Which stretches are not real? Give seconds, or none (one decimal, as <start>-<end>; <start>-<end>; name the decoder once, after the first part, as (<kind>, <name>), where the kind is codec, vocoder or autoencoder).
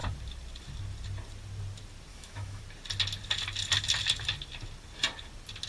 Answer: 2.1-2.6 (autoencoder, DAC-VAE)